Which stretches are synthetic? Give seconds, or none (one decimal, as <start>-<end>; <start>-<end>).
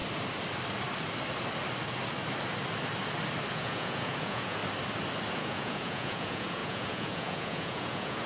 3.5-4.6; 5.4-8.3